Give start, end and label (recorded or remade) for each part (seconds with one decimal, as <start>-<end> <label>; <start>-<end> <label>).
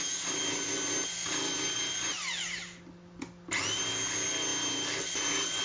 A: 0.0-5.6 recorded